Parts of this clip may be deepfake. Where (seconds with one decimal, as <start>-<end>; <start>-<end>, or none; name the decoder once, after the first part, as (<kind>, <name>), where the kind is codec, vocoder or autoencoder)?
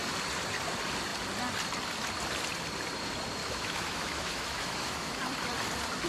3.4-5.2 (autoencoder, DAC-VAE)